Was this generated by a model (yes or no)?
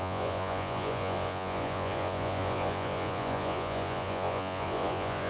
yes